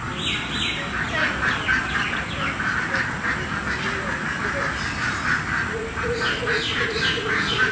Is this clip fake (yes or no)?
no